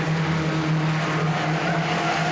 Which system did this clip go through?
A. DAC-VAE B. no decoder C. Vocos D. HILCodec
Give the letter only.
B